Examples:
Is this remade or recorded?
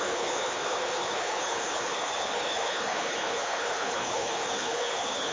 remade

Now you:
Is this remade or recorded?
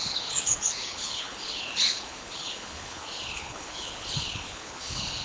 remade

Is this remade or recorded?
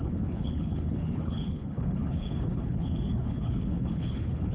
remade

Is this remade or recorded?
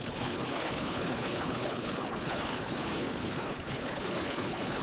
remade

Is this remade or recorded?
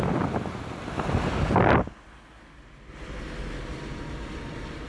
recorded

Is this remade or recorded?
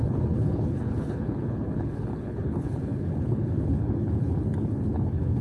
remade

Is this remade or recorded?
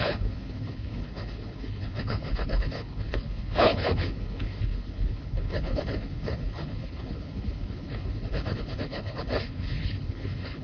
remade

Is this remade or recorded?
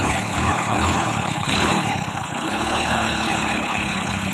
remade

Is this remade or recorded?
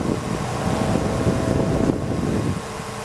recorded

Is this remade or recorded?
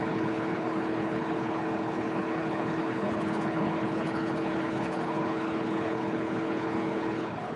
remade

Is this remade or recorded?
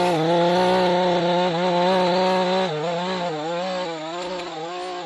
recorded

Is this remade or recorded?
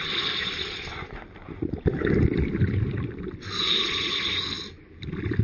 recorded